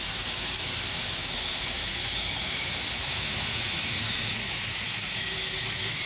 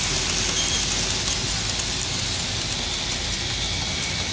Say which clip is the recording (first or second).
second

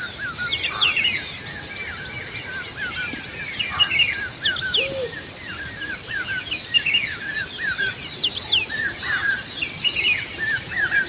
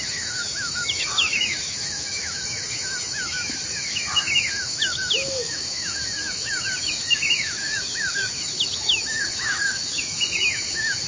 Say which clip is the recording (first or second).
first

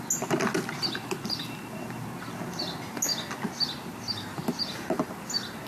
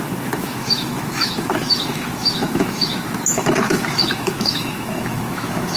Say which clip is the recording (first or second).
first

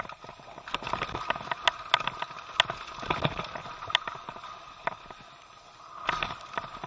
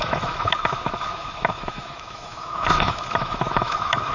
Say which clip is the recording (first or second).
first